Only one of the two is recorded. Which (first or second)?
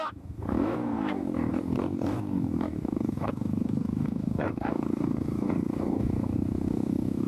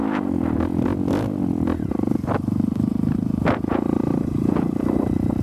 second